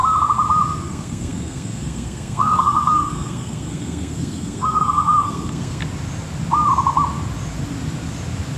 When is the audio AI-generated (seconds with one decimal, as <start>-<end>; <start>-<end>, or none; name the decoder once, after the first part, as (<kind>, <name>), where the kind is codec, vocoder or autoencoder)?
0.8-5.8 (codec, SNAC)